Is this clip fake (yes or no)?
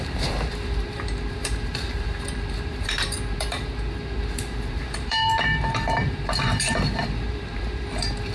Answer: yes